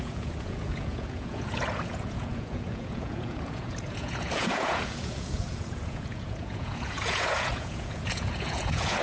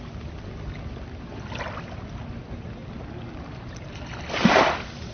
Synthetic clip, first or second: first